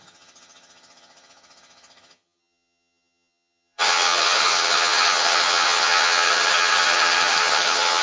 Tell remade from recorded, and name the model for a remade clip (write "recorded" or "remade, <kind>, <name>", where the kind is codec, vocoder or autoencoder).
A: remade, vocoder, HiFi-GAN